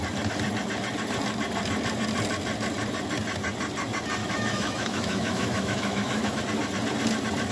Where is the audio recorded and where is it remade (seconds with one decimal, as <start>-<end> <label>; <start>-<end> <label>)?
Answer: 0.0-4.2 recorded; 4.2-6.4 remade; 6.4-7.5 recorded